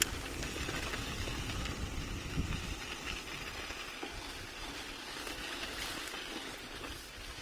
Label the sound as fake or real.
real